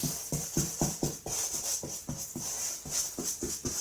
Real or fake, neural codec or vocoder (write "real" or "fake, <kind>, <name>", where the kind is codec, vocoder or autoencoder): real